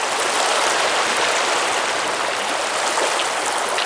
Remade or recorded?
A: recorded